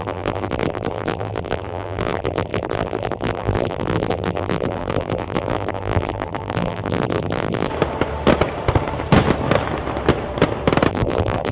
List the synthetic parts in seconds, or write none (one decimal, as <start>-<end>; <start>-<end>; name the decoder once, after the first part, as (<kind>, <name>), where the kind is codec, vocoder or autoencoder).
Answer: 0.0-7.7 (vocoder, BigVGAN v2); 10.9-11.5